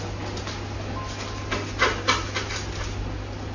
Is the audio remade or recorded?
recorded